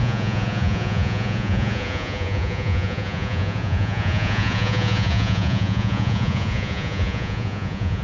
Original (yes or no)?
no